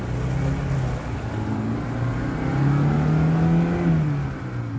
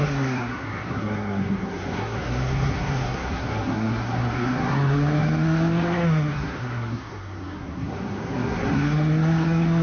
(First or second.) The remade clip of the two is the second